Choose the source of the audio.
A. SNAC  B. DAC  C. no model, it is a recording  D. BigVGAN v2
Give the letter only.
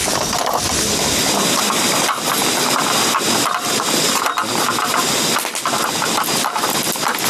C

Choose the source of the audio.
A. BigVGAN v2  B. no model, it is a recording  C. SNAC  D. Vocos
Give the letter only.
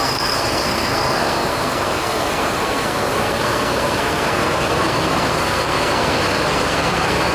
C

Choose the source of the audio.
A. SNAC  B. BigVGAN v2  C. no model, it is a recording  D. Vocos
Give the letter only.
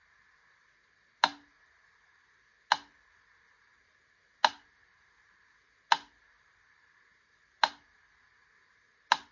C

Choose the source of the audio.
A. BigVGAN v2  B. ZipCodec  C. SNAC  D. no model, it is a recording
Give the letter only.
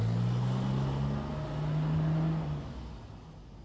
D